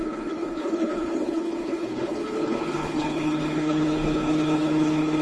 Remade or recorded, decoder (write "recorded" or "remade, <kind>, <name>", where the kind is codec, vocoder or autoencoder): remade, codec, HILCodec